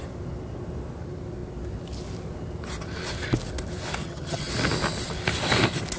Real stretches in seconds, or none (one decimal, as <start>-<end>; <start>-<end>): 0.0-4.0; 4.5-6.0